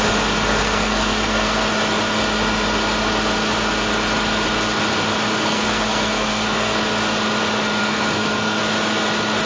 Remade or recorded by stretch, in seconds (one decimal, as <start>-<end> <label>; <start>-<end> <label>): 0.0-0.6 recorded; 0.6-1.6 remade; 1.6-5.4 recorded; 5.4-6.8 remade; 6.8-7.8 recorded; 7.8-8.6 remade; 8.6-9.5 recorded